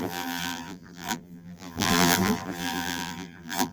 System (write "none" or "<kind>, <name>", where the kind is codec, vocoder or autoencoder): vocoder, BigVGAN v2